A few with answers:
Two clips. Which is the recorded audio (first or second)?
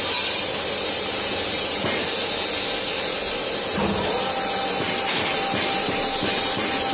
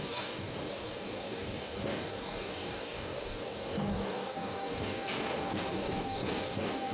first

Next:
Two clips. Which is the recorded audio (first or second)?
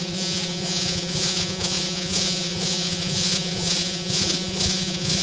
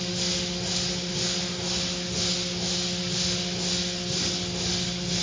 second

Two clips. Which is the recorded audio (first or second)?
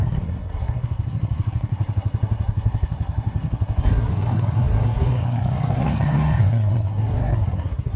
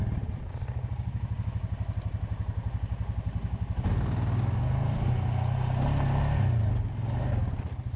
second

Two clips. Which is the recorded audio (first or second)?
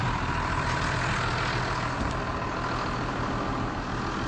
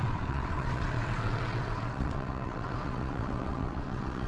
first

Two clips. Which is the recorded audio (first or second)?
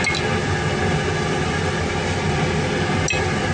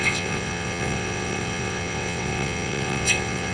first